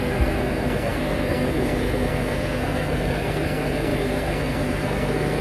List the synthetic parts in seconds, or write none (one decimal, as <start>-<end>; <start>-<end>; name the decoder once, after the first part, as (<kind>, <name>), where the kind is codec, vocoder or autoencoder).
0.0-5.4 (codec, SNAC)